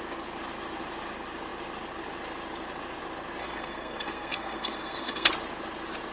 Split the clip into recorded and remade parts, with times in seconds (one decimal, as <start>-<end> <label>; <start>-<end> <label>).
0.0-3.4 recorded; 3.4-5.3 remade; 5.3-6.1 recorded